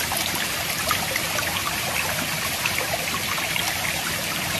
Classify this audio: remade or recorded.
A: recorded